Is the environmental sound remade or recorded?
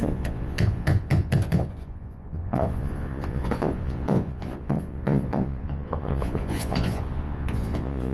remade